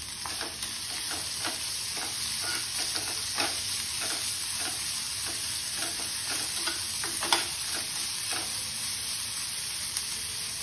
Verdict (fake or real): real